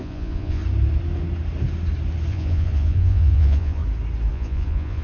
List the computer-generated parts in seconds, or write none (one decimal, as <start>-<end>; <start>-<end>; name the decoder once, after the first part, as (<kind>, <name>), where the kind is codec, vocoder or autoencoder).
0.0-0.6 (vocoder, Vocos); 2.3-3.8; 4.3-5.0